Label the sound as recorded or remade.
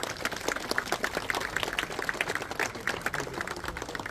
recorded